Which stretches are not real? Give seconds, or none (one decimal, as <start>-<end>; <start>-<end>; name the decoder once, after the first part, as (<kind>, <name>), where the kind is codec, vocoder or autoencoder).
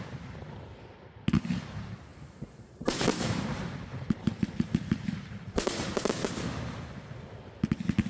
2.1-6.1 (vocoder, BigVGAN v2)